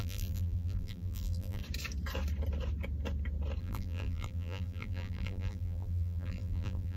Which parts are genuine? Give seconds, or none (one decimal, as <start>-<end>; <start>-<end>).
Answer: 1.6-3.6